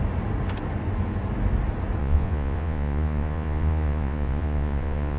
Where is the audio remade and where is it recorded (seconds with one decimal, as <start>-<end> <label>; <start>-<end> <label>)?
0.0-2.0 recorded; 2.0-5.2 remade